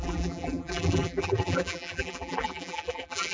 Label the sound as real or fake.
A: fake